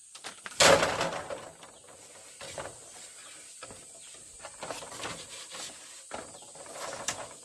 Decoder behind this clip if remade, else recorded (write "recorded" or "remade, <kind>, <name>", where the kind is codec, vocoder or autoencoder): recorded